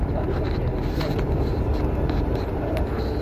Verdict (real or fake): fake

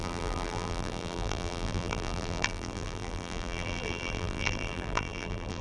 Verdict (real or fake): fake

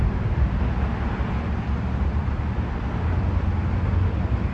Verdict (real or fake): real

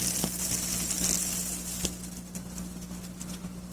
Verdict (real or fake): real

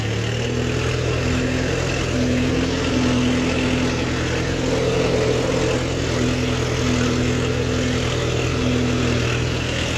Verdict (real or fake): real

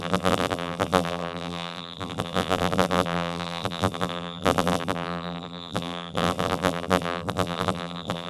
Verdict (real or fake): fake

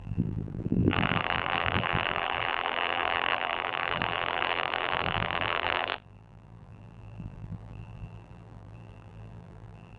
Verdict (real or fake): fake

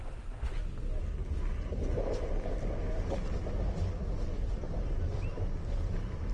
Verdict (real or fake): real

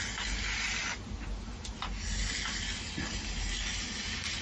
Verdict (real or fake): real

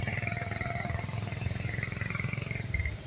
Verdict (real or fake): fake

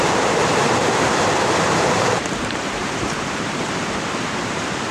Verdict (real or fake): fake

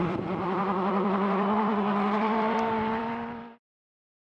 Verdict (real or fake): fake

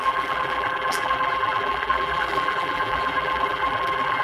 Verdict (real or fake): fake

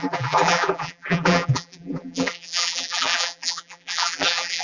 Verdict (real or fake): fake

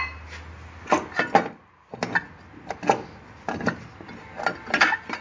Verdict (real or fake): real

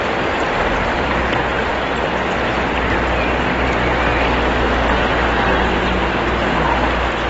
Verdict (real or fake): real